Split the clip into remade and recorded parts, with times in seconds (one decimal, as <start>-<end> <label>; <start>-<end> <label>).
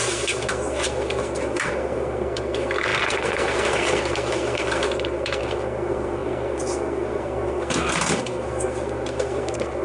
0.0-9.8 remade